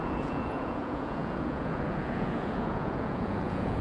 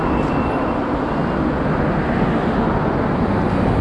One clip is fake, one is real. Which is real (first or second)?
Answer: second